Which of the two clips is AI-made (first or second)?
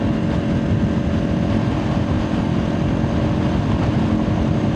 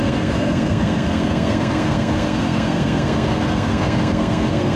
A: second